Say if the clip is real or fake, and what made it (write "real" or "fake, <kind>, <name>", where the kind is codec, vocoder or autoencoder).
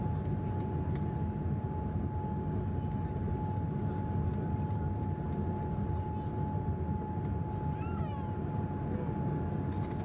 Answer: real